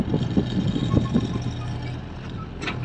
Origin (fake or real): real